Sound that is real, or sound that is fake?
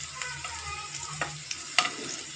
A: real